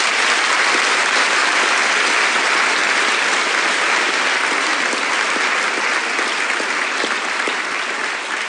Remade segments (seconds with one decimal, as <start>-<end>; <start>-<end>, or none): none